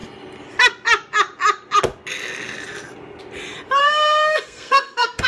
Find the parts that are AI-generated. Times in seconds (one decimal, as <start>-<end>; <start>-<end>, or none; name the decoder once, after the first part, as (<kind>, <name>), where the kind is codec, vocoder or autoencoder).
3.8-5.3 (codec, SNAC)